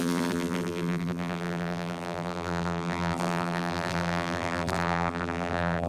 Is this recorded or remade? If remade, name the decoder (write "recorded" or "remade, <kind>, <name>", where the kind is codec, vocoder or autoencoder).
remade, vocoder, BigVGAN v2